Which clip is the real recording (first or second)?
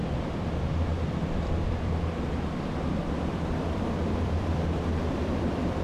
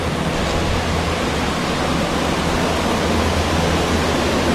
second